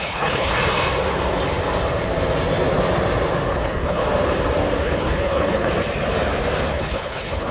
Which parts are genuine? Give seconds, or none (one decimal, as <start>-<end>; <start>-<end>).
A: 0.5-3.5; 4.0-4.8; 5.7-6.7